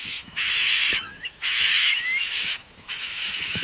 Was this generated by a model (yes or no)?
yes